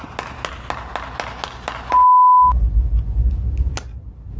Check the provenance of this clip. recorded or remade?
recorded